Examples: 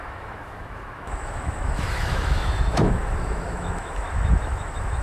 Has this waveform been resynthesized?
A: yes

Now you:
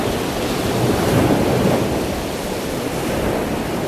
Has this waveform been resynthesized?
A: no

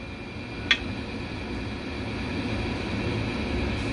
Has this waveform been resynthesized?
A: no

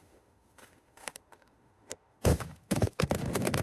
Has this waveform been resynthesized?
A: yes